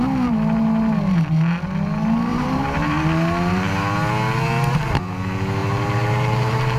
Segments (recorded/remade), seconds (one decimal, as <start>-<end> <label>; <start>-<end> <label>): 0.0-2.3 recorded; 2.3-3.7 remade; 3.7-5.6 recorded; 5.6-6.8 remade